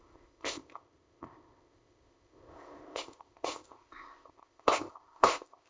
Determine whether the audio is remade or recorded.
remade